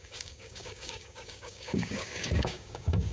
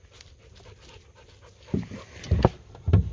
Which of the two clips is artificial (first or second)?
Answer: first